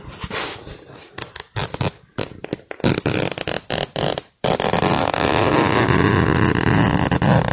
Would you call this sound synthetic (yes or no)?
yes